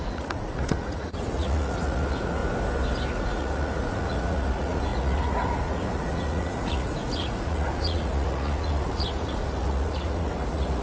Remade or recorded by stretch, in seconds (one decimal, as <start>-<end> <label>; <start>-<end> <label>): 0.0-2.4 remade; 2.4-3.1 recorded; 3.1-10.8 remade